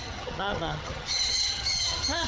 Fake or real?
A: fake